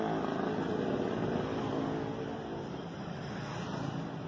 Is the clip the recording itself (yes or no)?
yes